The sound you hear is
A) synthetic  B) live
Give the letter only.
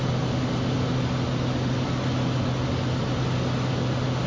B